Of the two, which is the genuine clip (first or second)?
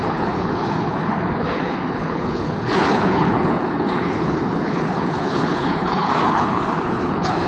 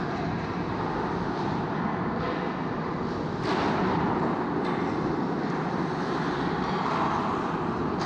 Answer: second